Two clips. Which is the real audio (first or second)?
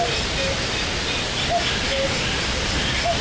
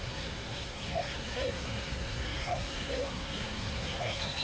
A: first